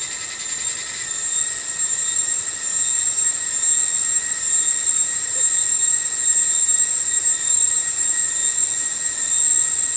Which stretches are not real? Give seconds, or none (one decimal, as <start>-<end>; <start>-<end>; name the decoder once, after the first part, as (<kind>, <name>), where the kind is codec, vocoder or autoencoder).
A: none